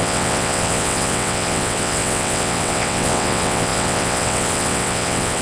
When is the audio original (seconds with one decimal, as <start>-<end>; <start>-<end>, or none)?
none